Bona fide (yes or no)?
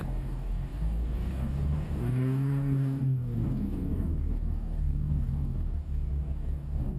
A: no